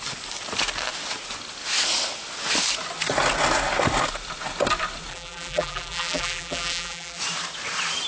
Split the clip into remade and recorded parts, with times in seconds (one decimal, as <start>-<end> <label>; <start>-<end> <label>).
0.0-5.1 recorded; 5.1-7.2 remade; 7.2-8.1 recorded